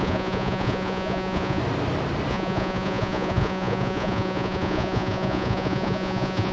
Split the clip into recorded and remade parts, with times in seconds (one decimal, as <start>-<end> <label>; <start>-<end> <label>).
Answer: 0.0-1.6 remade; 1.6-2.3 recorded; 2.3-6.5 remade

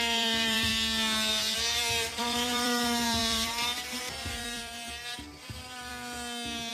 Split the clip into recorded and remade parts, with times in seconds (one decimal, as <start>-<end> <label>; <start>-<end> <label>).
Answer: 0.0-0.7 remade; 0.7-1.3 recorded; 1.3-5.9 remade; 5.9-6.7 recorded

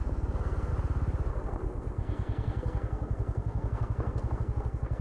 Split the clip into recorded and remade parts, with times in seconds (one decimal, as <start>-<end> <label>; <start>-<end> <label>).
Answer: 0.0-0.7 remade; 0.7-1.3 recorded; 1.3-5.0 remade

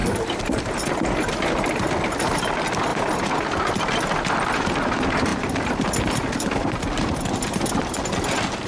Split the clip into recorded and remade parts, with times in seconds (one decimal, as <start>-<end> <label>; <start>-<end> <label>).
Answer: 0.0-0.6 remade; 0.6-2.9 recorded; 2.9-3.6 remade; 3.6-5.3 recorded; 5.3-7.1 remade; 7.1-8.7 recorded

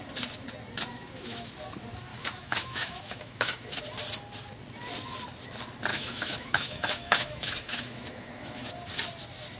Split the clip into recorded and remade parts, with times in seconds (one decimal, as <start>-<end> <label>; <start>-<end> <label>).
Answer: 0.0-0.9 recorded; 0.9-1.5 remade; 1.5-2.1 recorded; 2.1-3.8 remade; 3.8-5.9 recorded; 5.9-8.7 remade; 8.7-9.6 recorded

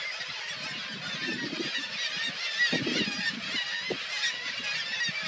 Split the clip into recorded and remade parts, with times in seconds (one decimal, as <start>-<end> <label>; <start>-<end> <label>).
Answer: 0.0-5.3 recorded